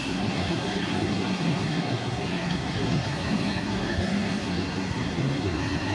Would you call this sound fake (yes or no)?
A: yes